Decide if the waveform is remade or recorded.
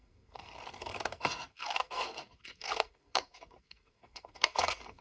remade